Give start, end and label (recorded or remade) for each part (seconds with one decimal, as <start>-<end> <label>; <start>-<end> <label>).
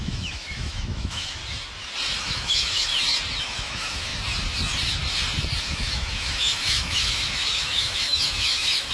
0.0-1.4 remade; 1.4-2.2 recorded; 2.2-2.9 remade; 2.9-3.4 recorded; 3.4-4.1 remade; 4.1-5.6 recorded; 5.6-8.9 remade